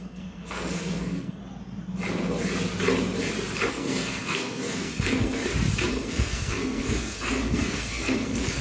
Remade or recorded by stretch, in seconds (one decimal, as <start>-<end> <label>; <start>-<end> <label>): 0.0-1.4 remade; 1.4-3.7 recorded; 3.7-5.4 remade; 5.4-5.9 recorded; 5.9-8.6 remade